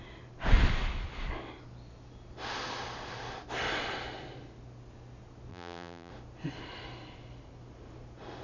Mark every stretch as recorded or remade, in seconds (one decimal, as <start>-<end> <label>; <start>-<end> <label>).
0.0-5.5 recorded; 5.5-6.1 remade; 6.1-8.4 recorded